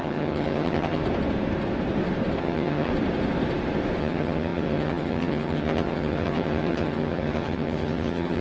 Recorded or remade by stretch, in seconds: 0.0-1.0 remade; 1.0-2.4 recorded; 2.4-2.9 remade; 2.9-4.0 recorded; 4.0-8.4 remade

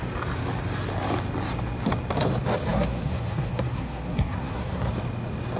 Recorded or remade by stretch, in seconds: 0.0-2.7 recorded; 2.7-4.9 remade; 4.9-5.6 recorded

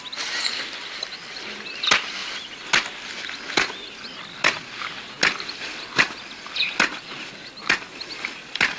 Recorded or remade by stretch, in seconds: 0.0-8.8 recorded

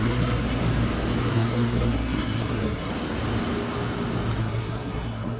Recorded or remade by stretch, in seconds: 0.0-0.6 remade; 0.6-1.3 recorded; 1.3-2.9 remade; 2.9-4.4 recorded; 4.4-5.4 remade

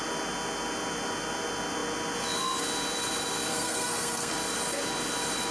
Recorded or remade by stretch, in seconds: 0.0-3.5 recorded; 3.5-4.3 remade; 4.3-5.5 recorded

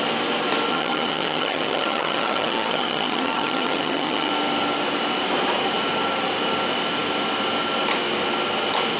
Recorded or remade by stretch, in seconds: 0.0-0.7 recorded; 0.7-4.3 remade; 4.3-9.0 recorded

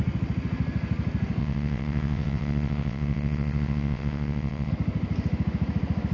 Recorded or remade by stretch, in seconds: 0.0-1.4 recorded; 1.4-4.7 remade; 4.7-6.1 recorded